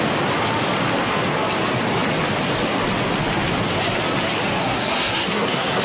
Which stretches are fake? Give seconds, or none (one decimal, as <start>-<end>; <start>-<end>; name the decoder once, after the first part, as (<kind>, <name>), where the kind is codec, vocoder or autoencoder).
4.6-5.8 (codec, SNAC)